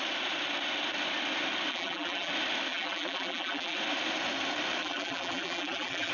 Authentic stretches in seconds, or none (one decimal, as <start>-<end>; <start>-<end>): 0.0-1.7; 2.3-2.7; 3.8-4.8